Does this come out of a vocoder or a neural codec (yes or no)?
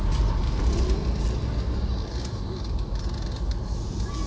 no